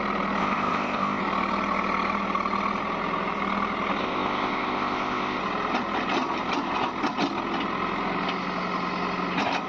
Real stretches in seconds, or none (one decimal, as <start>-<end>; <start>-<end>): 0.0-0.4; 1.2-4.0; 5.4-9.7